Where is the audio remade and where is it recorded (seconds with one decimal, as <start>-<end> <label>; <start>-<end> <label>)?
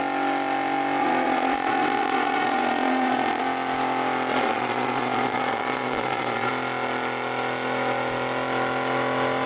0.0-1.0 recorded; 1.0-3.4 remade; 3.4-4.3 recorded; 4.3-6.5 remade; 6.5-9.5 recorded